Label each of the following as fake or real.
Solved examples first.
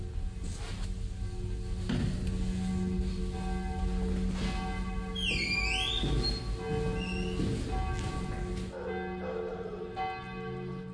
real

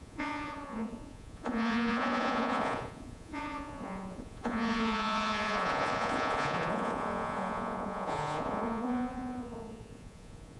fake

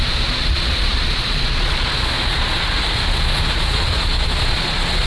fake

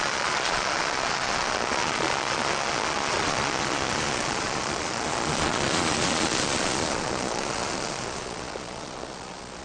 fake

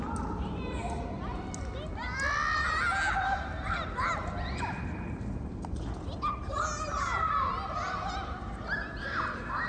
real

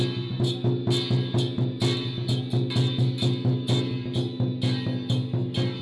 real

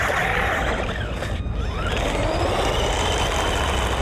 real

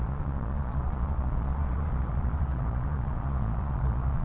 fake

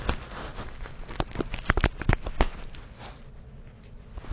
real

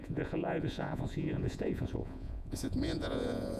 fake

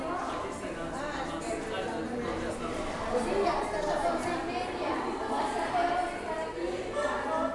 real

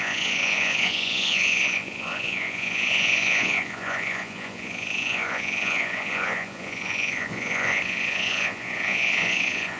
fake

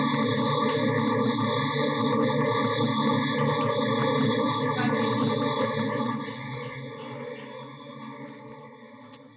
real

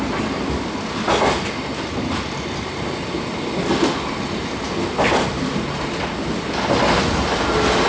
real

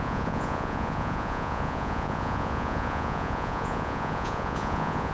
fake